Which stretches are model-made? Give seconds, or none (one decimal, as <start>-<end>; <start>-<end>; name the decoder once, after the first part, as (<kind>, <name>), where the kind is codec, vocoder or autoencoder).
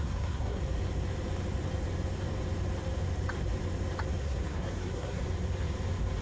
0.0-0.6 (codec, SNAC); 4.2-5.2